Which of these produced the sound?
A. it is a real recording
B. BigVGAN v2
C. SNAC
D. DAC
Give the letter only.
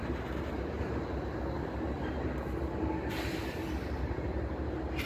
B